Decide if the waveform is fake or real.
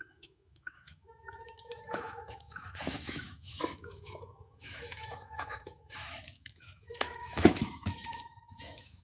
fake